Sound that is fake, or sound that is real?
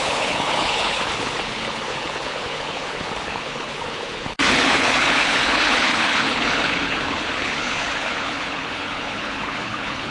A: fake